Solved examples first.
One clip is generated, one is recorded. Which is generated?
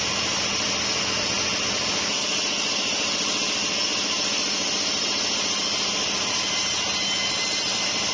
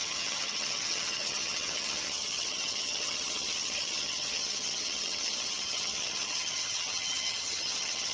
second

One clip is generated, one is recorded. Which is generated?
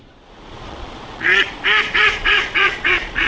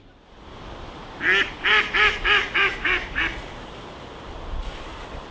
first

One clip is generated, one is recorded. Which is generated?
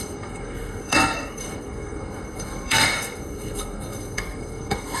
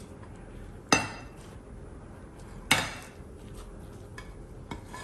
first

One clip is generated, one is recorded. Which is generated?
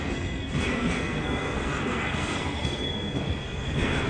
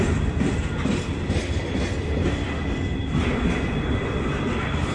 first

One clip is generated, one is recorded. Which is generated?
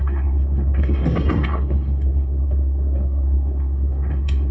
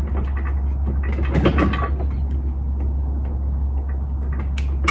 first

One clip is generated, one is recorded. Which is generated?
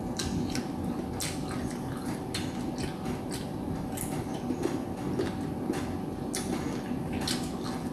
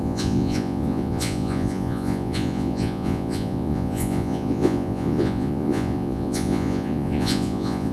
second